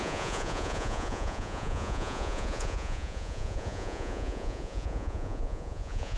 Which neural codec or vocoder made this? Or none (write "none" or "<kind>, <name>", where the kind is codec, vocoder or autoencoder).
vocoder, Vocos